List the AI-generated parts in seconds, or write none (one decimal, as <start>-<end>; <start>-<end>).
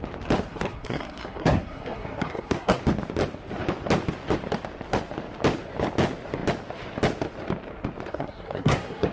0.5-2.8; 8.1-9.1